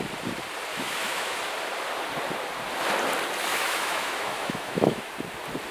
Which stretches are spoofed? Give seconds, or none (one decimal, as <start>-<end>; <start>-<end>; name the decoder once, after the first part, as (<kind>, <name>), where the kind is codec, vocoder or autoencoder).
0.7-1.4 (autoencoder, DAC-VAE); 3.5-5.1